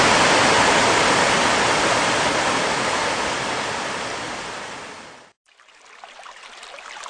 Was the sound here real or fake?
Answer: real